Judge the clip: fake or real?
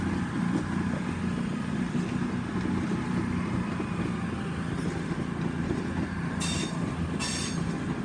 real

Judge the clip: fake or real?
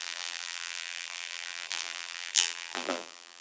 fake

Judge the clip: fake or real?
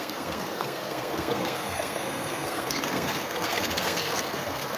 fake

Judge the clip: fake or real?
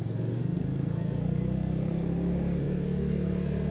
fake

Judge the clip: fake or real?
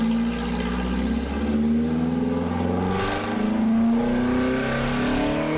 real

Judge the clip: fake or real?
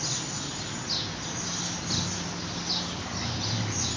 real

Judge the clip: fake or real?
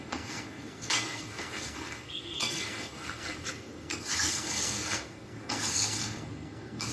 fake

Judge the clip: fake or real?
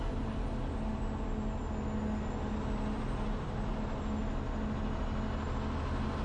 real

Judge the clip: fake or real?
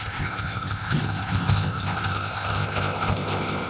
fake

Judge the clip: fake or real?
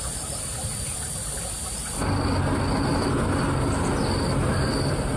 real